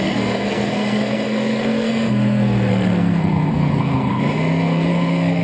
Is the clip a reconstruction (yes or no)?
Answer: yes